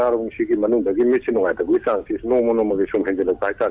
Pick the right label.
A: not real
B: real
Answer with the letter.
B